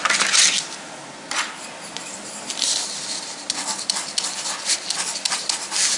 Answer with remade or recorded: recorded